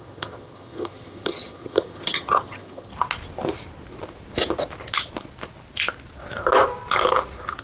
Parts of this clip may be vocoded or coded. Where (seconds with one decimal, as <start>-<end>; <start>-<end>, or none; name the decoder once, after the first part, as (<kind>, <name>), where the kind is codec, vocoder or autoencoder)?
0.0-2.9 (vocoder, HiFi-GAN)